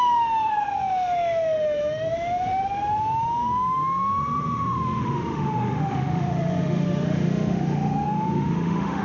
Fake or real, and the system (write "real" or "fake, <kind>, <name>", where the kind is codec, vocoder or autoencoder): fake, autoencoder, DAC-VAE